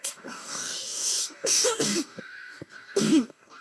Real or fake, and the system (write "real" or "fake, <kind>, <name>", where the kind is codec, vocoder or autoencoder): fake, codec, DAC